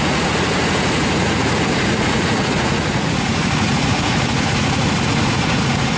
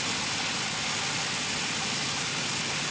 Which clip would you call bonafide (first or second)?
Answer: second